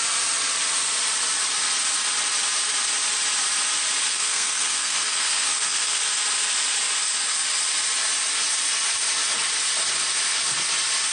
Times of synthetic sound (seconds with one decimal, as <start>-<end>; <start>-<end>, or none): 4.1-6.0